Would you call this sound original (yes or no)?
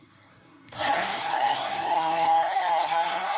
no